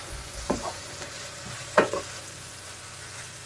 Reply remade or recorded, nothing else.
remade